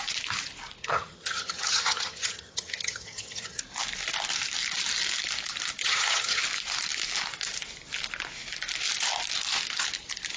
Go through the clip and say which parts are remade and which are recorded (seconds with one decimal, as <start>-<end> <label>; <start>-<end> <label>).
0.0-0.8 recorded; 0.8-3.6 remade; 3.6-5.8 recorded; 5.8-6.4 remade; 6.4-10.4 recorded